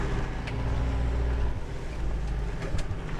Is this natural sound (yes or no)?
yes